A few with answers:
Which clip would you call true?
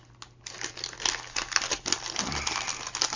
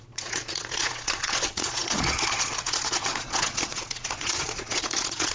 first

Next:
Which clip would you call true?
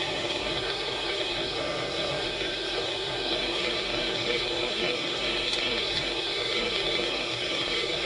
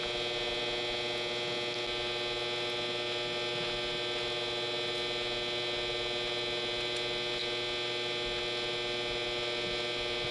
second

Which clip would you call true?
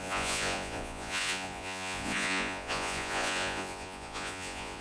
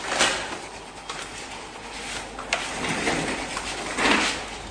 second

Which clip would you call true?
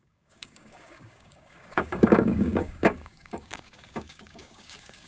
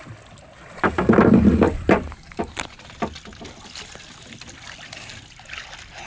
second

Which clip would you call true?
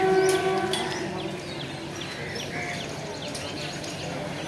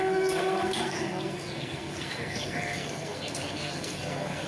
first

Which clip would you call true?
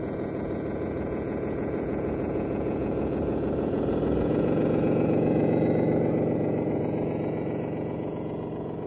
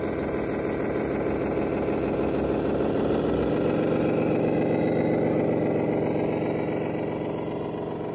second